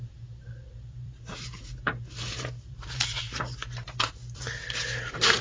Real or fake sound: fake